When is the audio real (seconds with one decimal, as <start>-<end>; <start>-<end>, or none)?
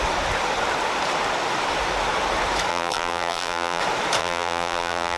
0.0-2.7; 3.8-4.2